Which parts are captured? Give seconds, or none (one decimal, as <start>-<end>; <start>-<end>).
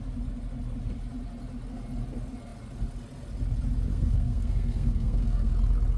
0.0-3.9; 5.5-6.0